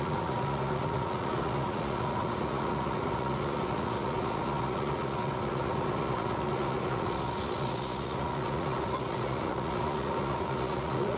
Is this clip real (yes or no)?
no